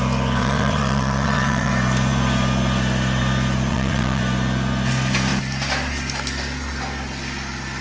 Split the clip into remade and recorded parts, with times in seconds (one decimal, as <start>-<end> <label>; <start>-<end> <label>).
0.0-0.4 recorded; 0.4-1.7 remade; 1.7-3.7 recorded; 3.7-4.2 remade; 4.2-7.8 recorded